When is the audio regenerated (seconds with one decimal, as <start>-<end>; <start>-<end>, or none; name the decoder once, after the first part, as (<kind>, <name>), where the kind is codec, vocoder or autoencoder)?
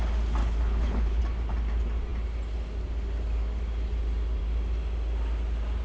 0.4-1.2 (codec, HILCodec)